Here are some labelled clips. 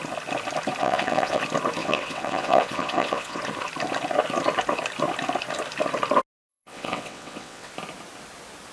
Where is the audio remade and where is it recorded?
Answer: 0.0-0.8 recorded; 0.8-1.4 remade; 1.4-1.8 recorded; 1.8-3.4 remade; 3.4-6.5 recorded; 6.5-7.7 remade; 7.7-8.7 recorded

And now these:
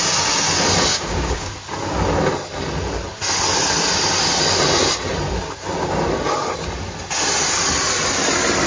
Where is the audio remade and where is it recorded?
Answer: 0.0-0.9 recorded; 0.9-1.5 remade; 1.5-8.7 recorded

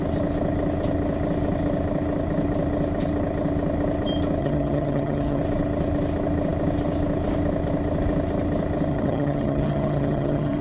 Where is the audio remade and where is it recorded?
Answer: 0.0-4.4 recorded; 4.4-5.4 remade; 5.4-8.9 recorded; 8.9-10.6 remade